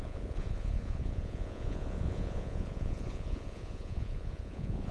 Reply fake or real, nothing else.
fake